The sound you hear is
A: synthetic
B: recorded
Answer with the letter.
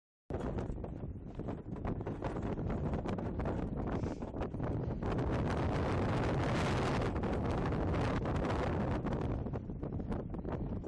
B